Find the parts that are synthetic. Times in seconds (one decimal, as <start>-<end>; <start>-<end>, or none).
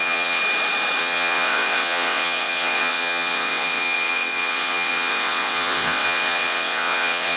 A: 0.0-0.4; 1.0-7.4